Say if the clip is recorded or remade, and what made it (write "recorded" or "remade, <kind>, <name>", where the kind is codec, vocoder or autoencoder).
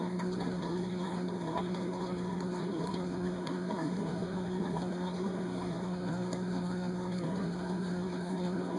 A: remade, codec, SNAC